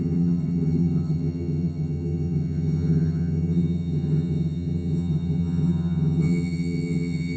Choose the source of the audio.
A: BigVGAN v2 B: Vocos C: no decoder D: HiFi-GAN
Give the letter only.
D